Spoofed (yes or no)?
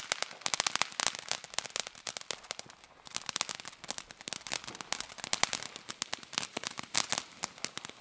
no